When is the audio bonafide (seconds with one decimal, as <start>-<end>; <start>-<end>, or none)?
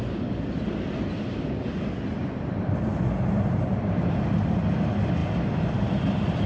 0.0-6.5